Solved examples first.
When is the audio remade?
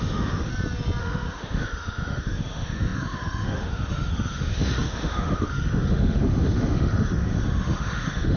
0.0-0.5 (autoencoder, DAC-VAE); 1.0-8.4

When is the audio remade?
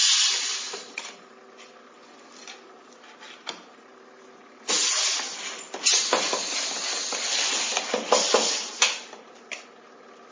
none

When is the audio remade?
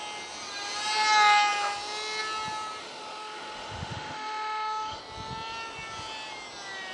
2.8-5.0 (autoencoder, DAC-VAE)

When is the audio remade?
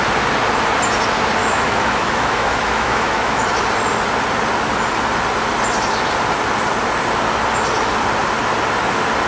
1.4-3.5 (autoencoder, DAC-VAE)